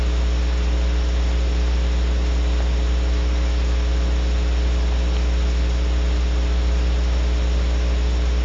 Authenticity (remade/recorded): recorded